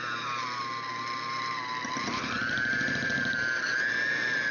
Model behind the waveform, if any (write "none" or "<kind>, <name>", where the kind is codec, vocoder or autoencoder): vocoder, BigVGAN v2